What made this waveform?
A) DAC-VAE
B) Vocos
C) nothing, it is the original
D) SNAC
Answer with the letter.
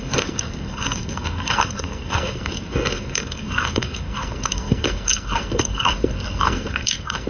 D